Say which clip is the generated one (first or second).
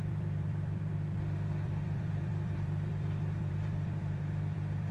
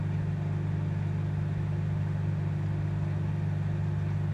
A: first